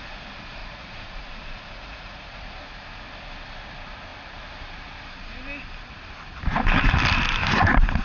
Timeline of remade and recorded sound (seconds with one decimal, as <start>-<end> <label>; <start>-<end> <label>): 0.0-0.6 recorded; 0.6-2.5 remade; 2.5-8.0 recorded